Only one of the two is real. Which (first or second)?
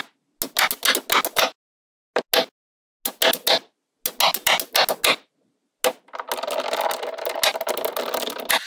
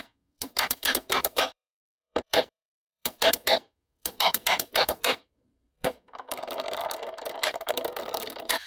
first